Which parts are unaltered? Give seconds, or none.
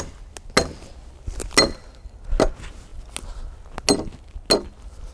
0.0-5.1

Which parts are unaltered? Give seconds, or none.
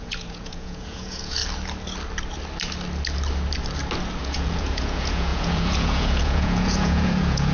1.4-4.2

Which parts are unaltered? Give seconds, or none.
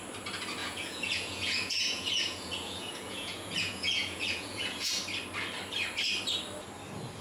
0.0-0.6; 4.9-7.2